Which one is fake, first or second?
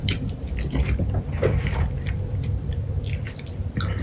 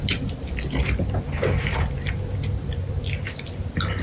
first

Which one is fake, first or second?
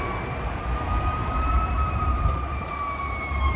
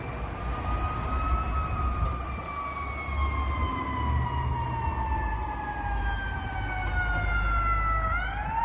first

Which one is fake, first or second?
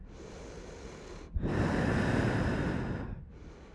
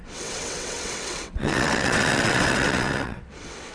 second